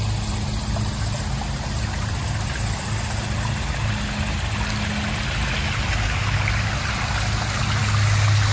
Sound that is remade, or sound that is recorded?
recorded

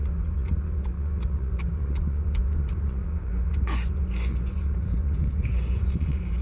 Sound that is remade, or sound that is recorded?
remade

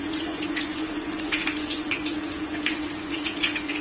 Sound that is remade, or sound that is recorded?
remade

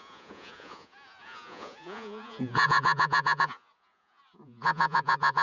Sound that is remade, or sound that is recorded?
remade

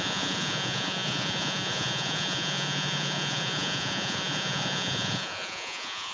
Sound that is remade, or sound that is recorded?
remade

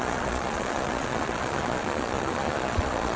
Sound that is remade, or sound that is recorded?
remade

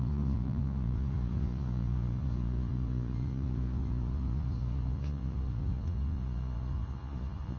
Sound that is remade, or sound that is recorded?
remade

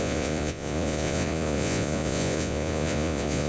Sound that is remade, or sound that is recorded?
remade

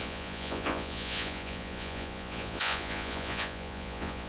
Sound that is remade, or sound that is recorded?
remade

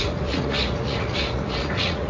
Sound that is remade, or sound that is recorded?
remade